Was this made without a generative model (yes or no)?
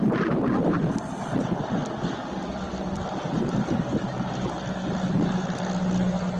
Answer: yes